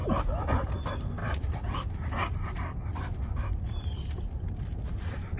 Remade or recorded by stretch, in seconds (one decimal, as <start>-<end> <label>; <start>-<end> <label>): 0.0-0.7 remade; 0.7-1.2 recorded; 1.2-4.4 remade; 4.4-5.4 recorded